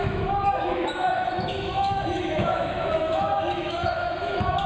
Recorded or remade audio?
remade